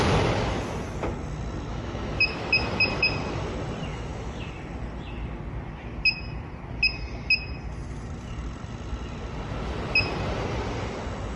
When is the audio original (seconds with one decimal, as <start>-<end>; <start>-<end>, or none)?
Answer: 0.0-1.7; 2.5-3.9; 4.5-11.4